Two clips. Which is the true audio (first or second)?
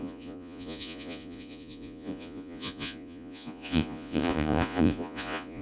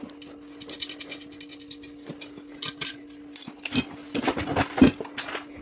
second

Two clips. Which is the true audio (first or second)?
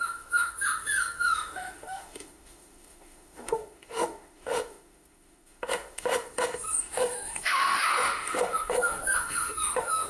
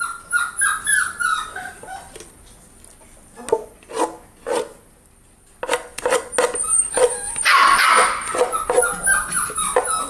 second